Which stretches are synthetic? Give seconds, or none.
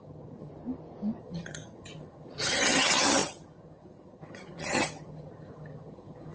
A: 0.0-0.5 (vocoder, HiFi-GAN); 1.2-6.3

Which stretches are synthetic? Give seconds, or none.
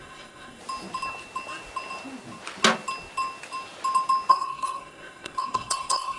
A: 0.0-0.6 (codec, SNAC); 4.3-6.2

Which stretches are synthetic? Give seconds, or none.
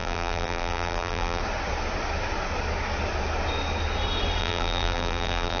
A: 0.0-1.4 (vocoder, BigVGAN v2); 4.4-5.6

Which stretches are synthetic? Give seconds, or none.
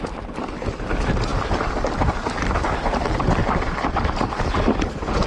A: 1.3-2.4 (vocoder, BigVGAN v2); 3.4-4.2